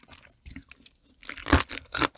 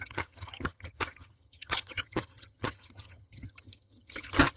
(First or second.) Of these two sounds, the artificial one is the second